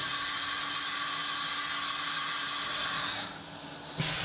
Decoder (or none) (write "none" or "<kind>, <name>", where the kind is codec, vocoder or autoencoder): none